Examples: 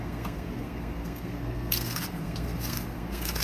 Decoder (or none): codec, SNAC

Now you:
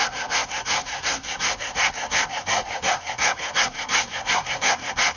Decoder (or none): codec, SNAC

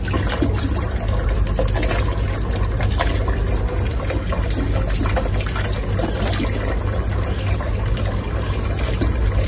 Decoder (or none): none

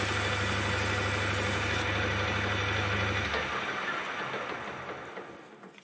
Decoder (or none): none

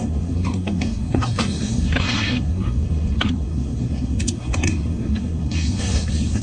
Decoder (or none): codec, SNAC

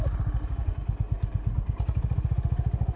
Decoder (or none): none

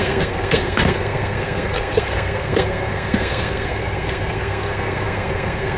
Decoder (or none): codec, SNAC